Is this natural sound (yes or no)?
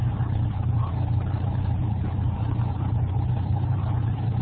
no